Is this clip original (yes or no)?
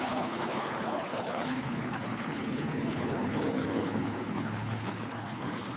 no